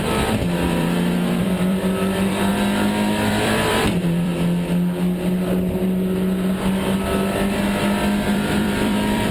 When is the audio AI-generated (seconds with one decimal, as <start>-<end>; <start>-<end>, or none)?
0.0-2.5; 3.3-4.3; 8.3-9.3